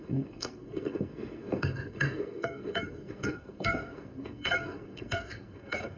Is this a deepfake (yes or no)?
yes